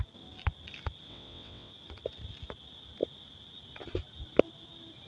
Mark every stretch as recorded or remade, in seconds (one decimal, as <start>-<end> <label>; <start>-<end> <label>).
0.0-1.1 recorded; 1.1-1.7 remade; 1.7-5.1 recorded